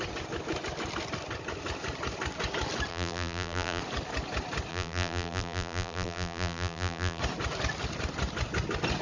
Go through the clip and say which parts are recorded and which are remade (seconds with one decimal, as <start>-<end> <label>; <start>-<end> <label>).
0.0-2.9 recorded; 2.9-3.8 remade; 3.8-4.7 recorded; 4.7-7.2 remade; 7.2-9.0 recorded